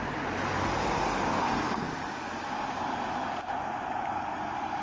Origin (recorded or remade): recorded